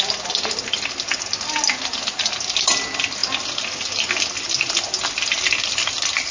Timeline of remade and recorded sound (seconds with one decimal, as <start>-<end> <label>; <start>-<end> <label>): 0.0-6.3 recorded